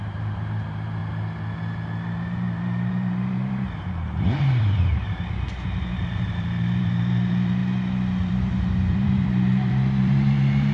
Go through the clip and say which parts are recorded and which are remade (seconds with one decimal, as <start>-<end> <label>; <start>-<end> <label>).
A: 0.0-1.0 remade; 1.0-2.9 recorded; 2.9-7.6 remade; 7.6-8.3 recorded; 8.3-10.7 remade